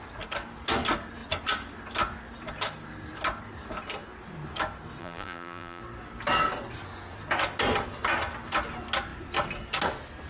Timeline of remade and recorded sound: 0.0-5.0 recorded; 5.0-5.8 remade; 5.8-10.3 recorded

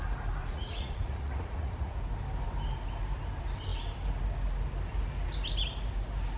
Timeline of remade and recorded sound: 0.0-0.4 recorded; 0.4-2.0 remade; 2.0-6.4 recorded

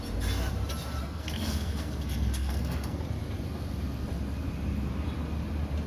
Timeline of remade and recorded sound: 0.0-1.0 recorded; 1.0-3.0 remade; 3.0-5.9 recorded

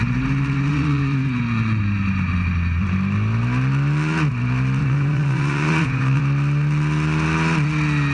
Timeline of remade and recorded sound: 0.0-0.7 recorded; 0.7-1.8 remade; 1.8-4.8 recorded; 4.8-6.2 remade; 6.2-8.1 recorded

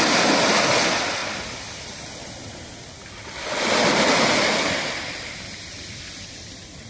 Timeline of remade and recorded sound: 0.0-6.9 recorded

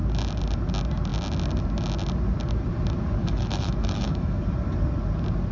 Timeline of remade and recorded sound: 0.0-3.2 recorded; 3.2-4.4 remade; 4.4-5.5 recorded

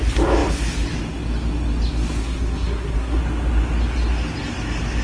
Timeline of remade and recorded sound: 0.0-2.2 recorded; 2.2-3.2 remade; 3.2-5.0 recorded